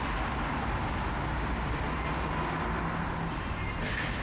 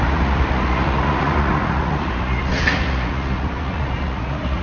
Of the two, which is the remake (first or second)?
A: second